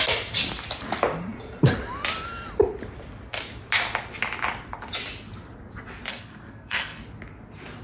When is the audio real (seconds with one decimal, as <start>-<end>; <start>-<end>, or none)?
0.0-6.1; 7.0-7.8